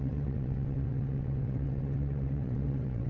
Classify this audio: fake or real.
fake